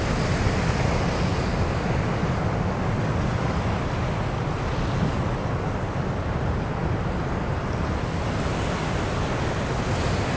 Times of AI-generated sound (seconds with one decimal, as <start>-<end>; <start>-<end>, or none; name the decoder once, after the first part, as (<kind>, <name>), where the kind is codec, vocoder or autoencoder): none